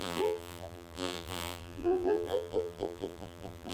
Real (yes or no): no